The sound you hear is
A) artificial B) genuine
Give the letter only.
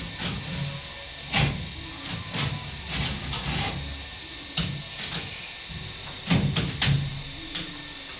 B